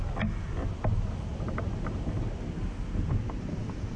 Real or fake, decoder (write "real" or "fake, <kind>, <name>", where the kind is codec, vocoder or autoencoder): real